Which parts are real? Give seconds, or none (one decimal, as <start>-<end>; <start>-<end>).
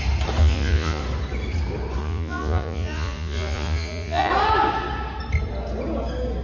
0.0-0.4; 1.0-2.0; 4.3-6.4